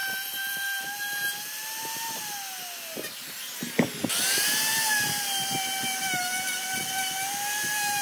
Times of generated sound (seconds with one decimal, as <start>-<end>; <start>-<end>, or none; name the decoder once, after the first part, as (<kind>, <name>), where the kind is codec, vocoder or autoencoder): 0.0-1.6 (vocoder, BigVGAN v2); 4.7-8.0